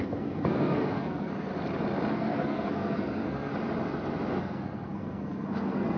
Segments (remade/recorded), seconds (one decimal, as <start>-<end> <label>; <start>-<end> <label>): 0.0-1.5 remade; 1.5-2.1 recorded; 2.1-3.5 remade; 3.5-4.4 recorded; 4.4-6.0 remade